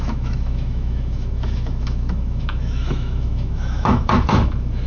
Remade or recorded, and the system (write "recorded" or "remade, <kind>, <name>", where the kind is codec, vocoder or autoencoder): remade, autoencoder, DAC-VAE